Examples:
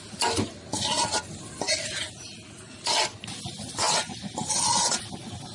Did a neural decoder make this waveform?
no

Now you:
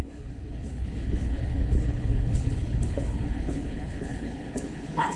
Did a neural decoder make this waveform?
yes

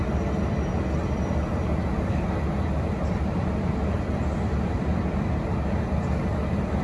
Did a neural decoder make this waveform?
no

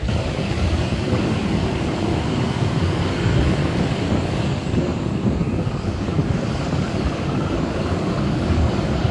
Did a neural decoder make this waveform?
yes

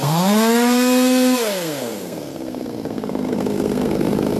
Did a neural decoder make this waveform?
yes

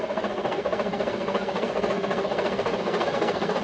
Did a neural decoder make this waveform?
yes